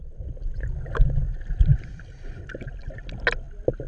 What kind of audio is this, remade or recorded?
recorded